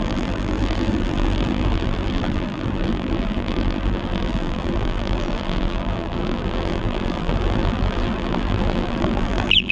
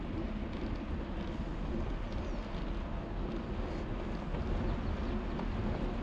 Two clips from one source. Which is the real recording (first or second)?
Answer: second